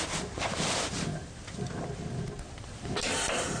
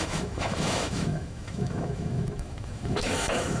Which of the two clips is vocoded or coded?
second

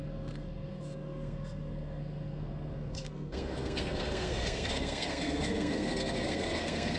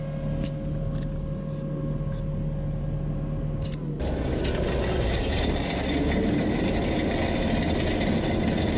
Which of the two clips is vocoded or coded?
first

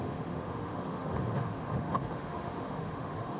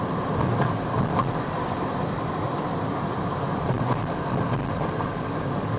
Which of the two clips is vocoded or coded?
first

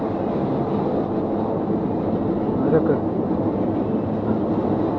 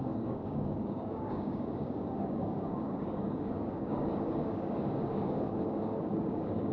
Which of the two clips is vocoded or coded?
second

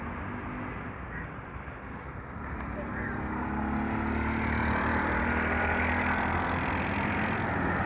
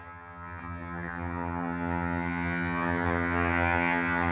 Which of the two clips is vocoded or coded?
second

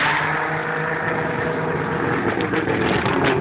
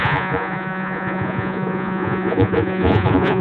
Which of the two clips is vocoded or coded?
second